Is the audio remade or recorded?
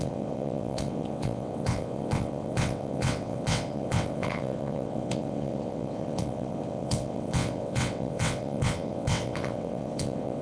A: remade